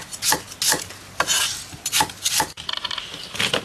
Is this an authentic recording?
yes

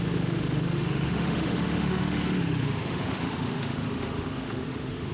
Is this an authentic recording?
no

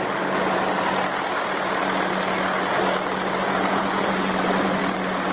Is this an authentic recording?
yes